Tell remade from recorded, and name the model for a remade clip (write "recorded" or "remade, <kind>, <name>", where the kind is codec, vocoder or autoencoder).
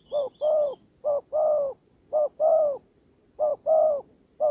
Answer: remade, vocoder, BigVGAN v2